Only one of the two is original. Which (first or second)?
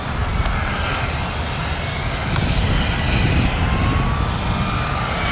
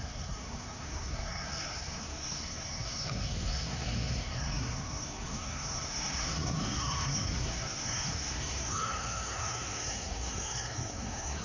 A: first